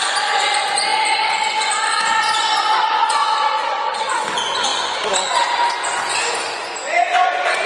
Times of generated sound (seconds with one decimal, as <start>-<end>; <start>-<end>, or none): 0.0-7.7